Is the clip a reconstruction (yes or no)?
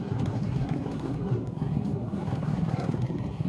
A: yes